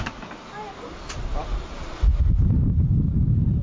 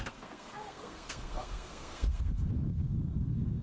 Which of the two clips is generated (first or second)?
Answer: second